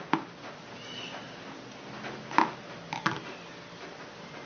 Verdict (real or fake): real